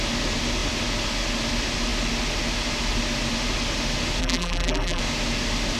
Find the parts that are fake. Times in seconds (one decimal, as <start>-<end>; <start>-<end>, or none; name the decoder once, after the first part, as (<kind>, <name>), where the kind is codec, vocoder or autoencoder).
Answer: 4.2-5.0 (vocoder, BigVGAN v2)

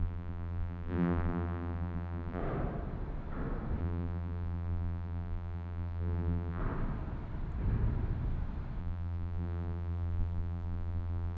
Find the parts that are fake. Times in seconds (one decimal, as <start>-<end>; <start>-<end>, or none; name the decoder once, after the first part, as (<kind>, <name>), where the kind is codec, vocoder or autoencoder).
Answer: 0.0-2.4 (vocoder, BigVGAN v2); 3.8-6.6; 8.8-11.4

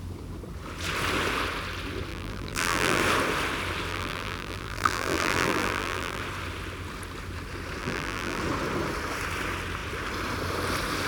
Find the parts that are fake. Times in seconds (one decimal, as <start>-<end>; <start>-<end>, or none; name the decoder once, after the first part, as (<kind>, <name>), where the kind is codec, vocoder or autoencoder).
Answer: 2.1-3.0 (vocoder, BigVGAN v2); 3.9-6.2; 7.8-8.4